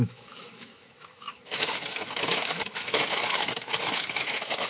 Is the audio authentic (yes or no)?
no